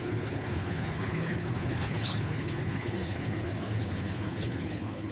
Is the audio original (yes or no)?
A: no